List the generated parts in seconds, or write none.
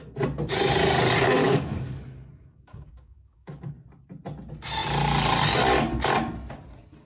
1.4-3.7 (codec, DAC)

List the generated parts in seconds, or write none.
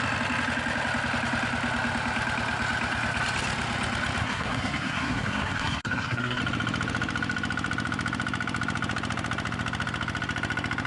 4.2-6.4 (codec, SNAC)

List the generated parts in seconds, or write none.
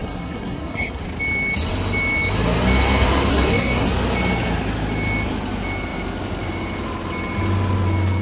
0.0-1.0 (codec, SNAC); 3.3-3.9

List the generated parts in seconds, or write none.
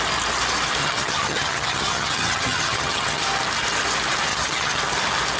0.8-3.2 (vocoder, HiFi-GAN); 4.3-4.8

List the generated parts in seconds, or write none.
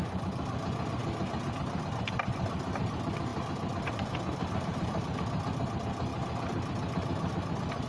4.4-5.2 (vocoder, BigVGAN v2)